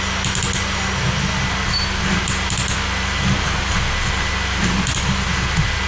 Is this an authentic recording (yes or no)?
yes